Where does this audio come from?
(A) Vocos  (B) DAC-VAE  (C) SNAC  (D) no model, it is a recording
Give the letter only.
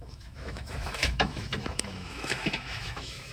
B